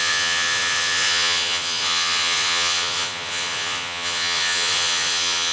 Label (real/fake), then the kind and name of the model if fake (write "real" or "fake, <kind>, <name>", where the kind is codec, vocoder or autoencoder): fake, vocoder, Vocos